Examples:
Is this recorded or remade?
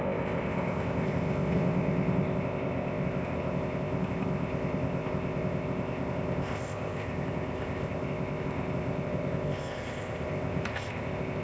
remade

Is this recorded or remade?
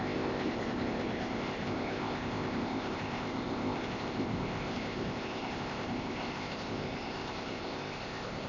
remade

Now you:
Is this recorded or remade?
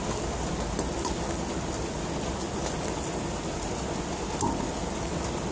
recorded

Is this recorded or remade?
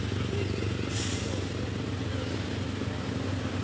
recorded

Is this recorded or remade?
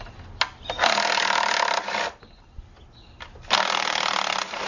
recorded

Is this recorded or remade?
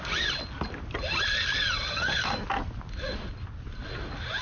recorded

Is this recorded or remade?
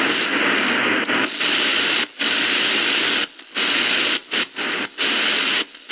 recorded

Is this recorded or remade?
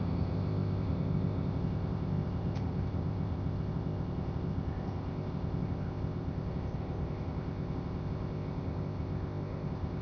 remade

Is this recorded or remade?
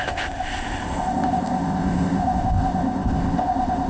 remade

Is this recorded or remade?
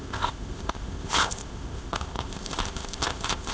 remade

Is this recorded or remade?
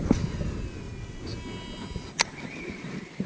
recorded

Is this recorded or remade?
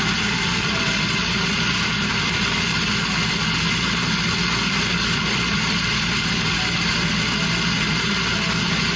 recorded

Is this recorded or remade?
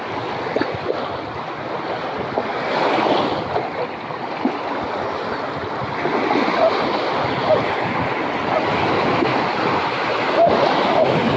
recorded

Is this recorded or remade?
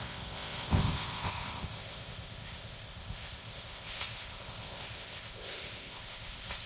remade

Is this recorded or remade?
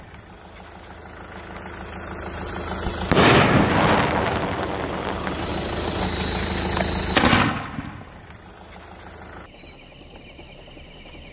recorded